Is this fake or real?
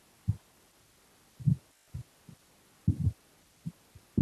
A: real